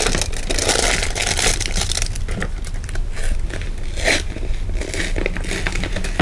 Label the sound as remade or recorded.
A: recorded